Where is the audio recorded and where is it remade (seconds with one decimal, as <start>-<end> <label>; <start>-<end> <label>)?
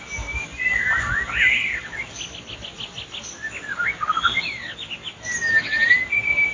0.0-6.5 recorded